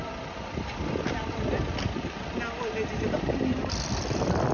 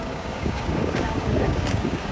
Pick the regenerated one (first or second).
second